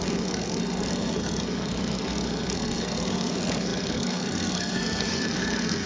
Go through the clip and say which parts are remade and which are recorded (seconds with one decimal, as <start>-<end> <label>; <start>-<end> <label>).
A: 0.0-5.9 remade